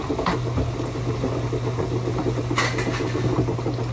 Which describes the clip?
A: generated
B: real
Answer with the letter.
B